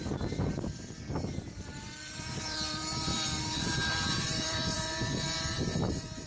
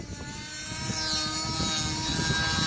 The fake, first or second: first